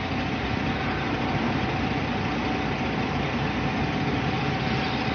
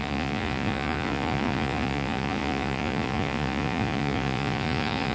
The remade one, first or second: second